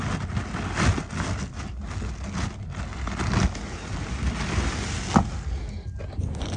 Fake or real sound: real